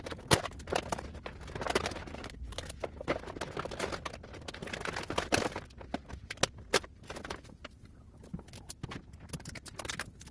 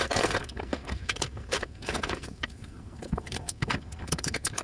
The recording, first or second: first